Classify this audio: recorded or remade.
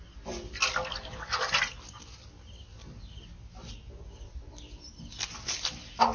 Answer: recorded